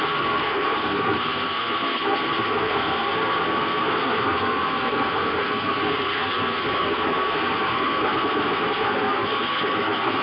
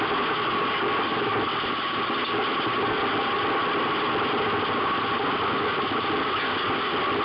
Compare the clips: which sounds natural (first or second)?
second